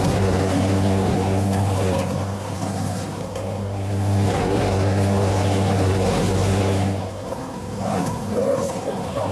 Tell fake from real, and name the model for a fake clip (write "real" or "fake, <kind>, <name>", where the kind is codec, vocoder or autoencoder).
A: fake, codec, SNAC